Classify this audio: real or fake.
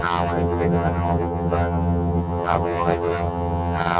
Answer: fake